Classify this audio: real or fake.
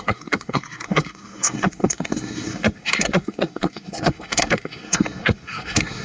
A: fake